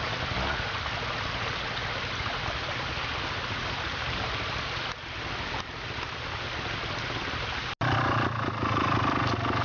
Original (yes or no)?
yes